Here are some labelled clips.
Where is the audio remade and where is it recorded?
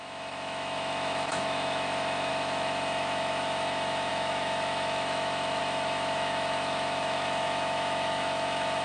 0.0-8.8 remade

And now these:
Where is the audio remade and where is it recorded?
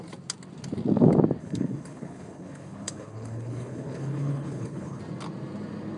0.0-1.4 recorded; 1.4-5.0 remade; 5.0-6.0 recorded